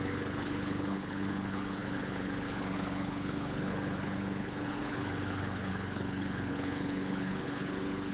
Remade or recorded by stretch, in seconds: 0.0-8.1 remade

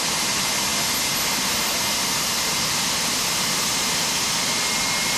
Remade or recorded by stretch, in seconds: 0.0-5.2 recorded

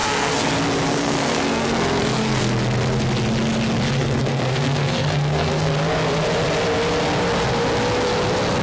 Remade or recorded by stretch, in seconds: 0.0-0.5 remade; 0.5-0.9 recorded; 0.9-2.5 remade; 2.5-4.0 recorded; 4.0-5.7 remade; 5.7-8.6 recorded

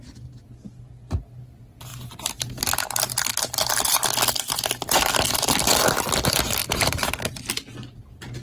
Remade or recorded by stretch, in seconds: 0.0-6.6 recorded; 6.6-7.3 remade; 7.3-8.4 recorded

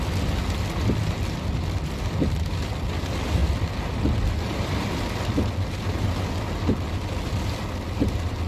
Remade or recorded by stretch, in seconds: 0.0-8.5 recorded

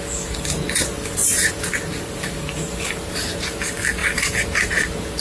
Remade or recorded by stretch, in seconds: 0.0-5.2 recorded